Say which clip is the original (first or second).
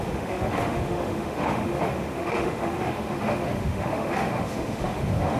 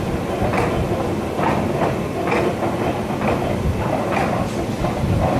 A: second